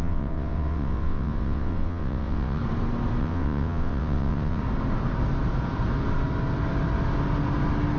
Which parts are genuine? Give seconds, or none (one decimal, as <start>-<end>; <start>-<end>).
2.6-3.2; 4.6-8.0